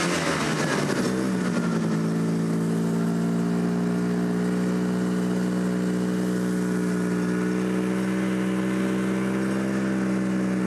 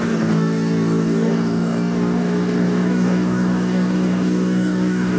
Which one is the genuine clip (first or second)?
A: first